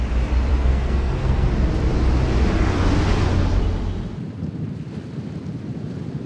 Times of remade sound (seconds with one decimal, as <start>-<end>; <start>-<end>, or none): 0.5-1.5